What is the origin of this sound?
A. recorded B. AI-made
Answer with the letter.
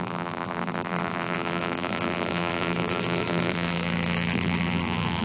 B